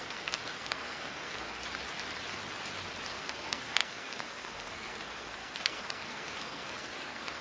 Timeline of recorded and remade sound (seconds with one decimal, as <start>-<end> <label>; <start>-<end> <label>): 0.0-1.6 remade; 1.6-3.1 recorded; 3.1-7.4 remade